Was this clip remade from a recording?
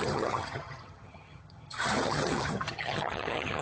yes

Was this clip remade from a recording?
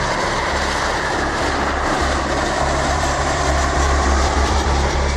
yes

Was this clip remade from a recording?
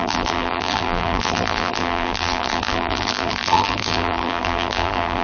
yes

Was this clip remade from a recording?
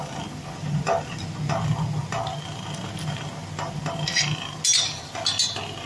no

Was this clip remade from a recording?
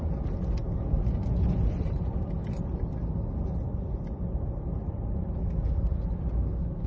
no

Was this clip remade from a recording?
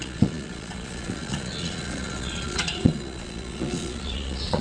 yes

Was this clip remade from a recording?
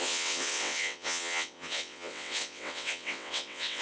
yes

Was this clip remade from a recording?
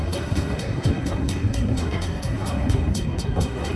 yes